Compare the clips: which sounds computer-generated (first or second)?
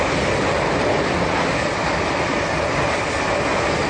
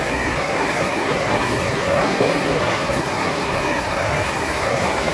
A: second